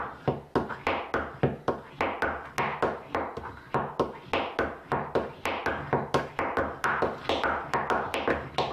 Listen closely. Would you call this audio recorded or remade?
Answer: recorded